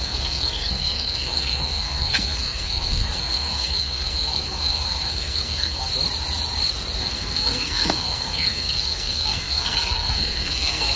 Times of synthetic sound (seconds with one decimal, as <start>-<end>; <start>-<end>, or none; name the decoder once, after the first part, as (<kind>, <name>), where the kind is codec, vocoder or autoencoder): 0.0-5.9 (codec, SNAC); 7.0-11.0